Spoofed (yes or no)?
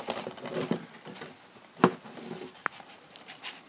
no